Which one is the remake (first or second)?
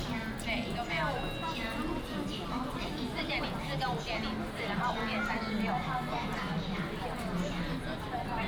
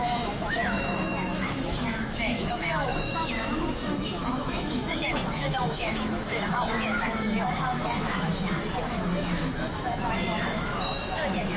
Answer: second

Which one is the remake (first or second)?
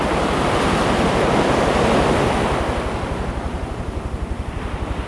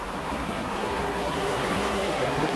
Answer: second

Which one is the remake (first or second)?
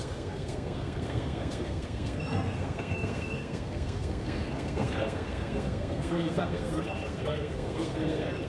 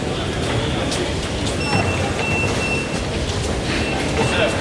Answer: first